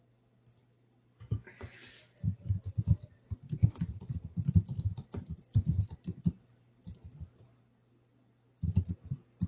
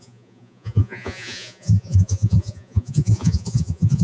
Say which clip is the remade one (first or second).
second